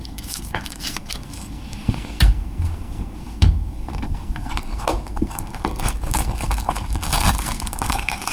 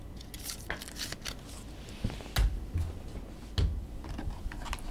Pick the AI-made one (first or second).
first